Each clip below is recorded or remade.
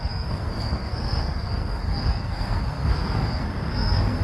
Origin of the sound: remade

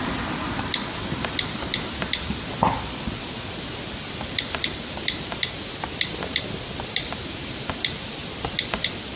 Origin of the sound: recorded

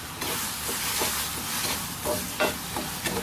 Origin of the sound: recorded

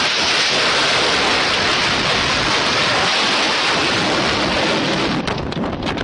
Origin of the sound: recorded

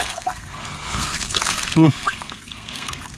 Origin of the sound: remade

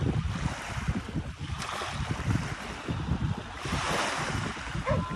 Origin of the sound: recorded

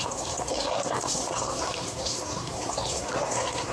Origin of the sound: remade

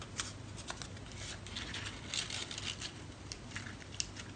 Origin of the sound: recorded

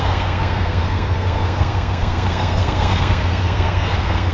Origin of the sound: remade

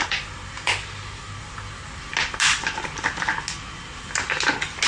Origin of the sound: recorded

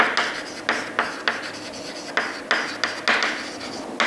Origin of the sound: recorded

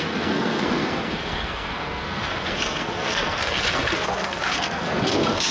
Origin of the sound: remade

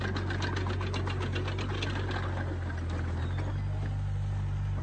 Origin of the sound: recorded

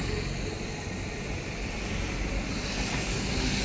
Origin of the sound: recorded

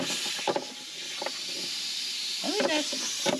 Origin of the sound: recorded